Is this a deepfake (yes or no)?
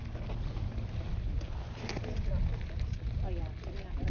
no